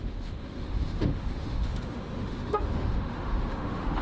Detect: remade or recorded remade